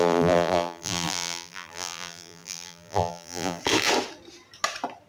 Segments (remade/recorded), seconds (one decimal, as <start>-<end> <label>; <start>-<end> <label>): 0.0-3.6 remade; 3.6-5.1 recorded